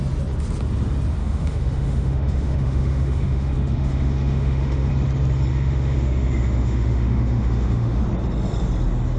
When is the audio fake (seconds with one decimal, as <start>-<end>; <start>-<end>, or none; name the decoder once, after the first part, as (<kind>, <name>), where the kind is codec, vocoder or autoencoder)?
1.2-4.9 (autoencoder, DAC-VAE); 5.5-8.0